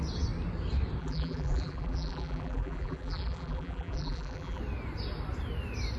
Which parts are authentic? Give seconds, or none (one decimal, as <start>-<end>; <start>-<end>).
0.0-1.0; 4.6-6.0